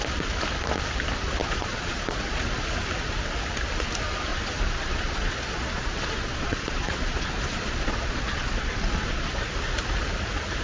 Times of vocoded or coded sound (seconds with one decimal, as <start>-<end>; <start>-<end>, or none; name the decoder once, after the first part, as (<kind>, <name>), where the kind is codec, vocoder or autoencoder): 1.4-2.7 (vocoder, Vocos); 4.3-9.5